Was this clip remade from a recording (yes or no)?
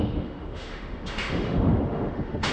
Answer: yes